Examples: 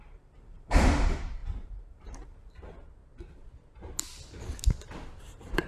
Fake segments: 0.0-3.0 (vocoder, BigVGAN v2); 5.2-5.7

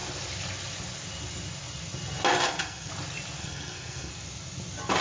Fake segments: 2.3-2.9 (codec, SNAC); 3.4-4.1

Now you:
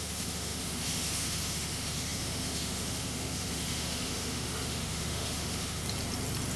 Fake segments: 0.0-5.8 (autoencoder, DAC-VAE)